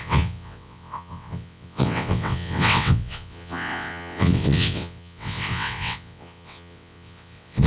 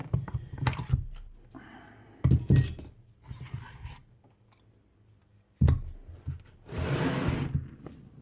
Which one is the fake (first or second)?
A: first